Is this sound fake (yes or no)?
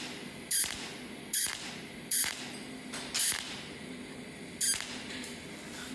no